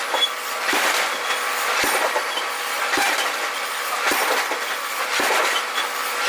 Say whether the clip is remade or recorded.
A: remade